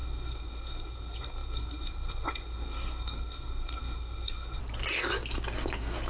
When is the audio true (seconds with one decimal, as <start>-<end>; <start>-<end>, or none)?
4.6-6.1